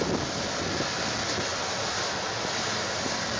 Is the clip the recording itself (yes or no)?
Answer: yes